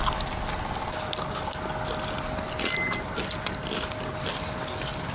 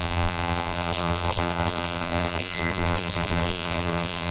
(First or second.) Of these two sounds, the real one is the first